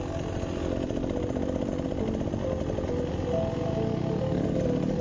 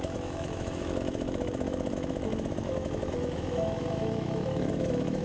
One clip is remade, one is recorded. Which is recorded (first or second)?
first